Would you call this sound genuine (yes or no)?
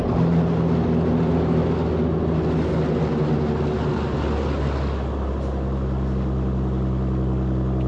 yes